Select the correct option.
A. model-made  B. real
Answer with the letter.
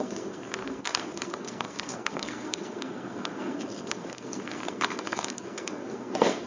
A